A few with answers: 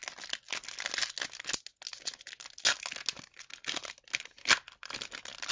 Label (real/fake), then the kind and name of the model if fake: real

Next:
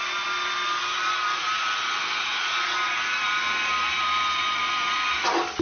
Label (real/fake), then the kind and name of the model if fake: real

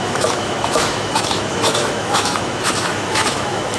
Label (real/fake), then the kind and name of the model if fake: fake, autoencoder, DAC-VAE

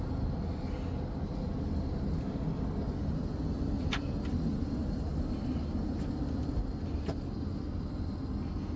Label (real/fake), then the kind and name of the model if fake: real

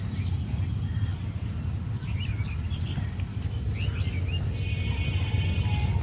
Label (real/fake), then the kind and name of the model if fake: real